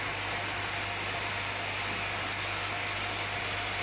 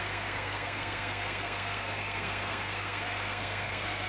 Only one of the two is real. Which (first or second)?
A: first